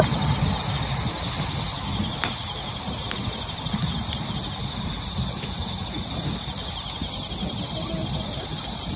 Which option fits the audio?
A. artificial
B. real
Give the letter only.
B